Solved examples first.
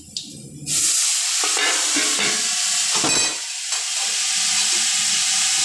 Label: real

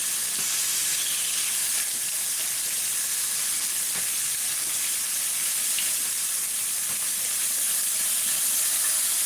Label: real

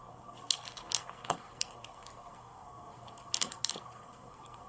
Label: fake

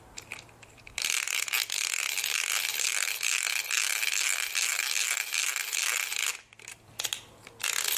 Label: real